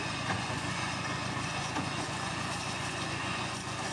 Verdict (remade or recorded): remade